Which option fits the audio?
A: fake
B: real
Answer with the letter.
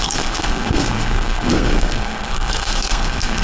A